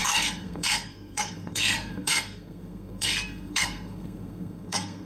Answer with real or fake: fake